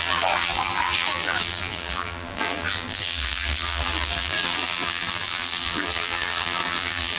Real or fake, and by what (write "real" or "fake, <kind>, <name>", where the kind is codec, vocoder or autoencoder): fake, vocoder, BigVGAN v2